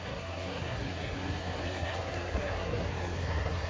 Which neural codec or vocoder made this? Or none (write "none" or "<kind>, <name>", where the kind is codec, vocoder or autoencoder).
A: codec, SNAC